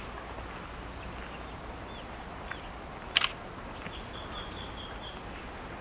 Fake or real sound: real